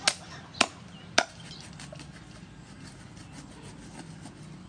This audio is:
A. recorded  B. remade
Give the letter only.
A